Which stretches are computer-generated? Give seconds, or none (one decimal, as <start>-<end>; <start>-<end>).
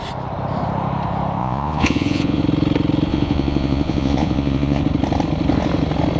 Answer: 1.4-2.4; 3.1-4.8